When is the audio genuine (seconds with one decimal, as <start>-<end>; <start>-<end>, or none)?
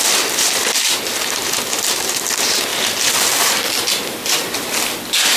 0.0-5.4